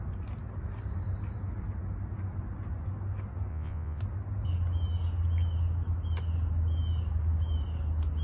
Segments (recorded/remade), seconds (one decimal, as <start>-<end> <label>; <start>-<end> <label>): 0.0-3.5 recorded; 3.5-4.0 remade; 4.0-8.2 recorded